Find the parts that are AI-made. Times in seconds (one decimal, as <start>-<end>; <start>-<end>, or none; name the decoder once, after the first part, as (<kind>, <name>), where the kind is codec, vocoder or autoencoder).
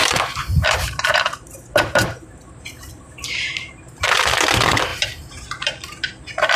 0.0-4.0 (vocoder, BigVGAN v2); 4.9-6.6